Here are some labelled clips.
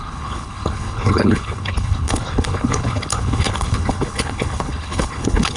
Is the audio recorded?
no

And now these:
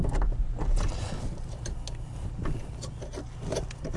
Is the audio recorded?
yes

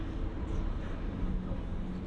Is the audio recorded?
yes